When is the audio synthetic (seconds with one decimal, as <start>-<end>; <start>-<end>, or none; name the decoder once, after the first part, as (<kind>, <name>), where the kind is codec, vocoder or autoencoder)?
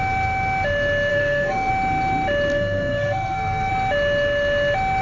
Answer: 1.1-1.7 (codec, SNAC); 2.5-3.7